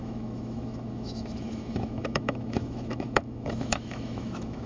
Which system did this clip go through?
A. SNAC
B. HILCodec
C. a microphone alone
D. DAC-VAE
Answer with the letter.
D